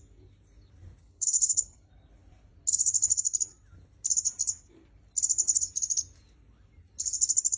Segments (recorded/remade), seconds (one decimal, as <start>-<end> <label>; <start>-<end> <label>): 0.0-1.0 recorded; 1.0-1.9 remade; 1.9-7.6 recorded